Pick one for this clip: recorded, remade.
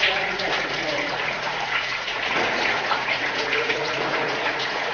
remade